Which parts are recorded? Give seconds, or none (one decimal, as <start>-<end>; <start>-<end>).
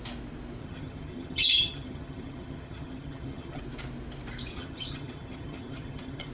0.0-0.6; 3.6-4.5